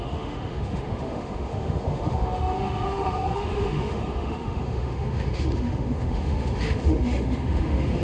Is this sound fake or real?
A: fake